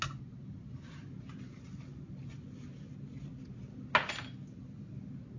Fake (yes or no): no